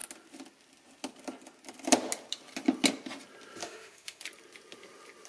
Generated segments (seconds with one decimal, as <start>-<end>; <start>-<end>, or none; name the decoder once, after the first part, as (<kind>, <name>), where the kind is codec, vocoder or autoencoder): 3.6-4.2 (autoencoder, DAC-VAE)